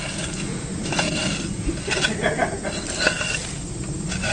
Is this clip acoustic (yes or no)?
yes